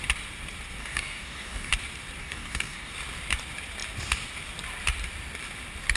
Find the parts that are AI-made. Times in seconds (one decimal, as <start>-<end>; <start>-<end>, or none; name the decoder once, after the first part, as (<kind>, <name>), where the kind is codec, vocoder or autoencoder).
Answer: 0.8-1.7 (codec, DAC); 2.2-2.9